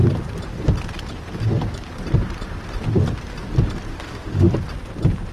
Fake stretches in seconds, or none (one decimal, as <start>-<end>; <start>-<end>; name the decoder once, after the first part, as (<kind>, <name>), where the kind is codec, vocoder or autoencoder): 3.9-4.5 (autoencoder, DAC-VAE)